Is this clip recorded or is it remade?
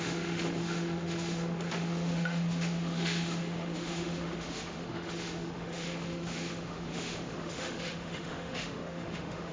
remade